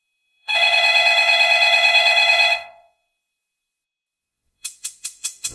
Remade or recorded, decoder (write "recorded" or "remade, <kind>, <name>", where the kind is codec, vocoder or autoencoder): remade, vocoder, Vocos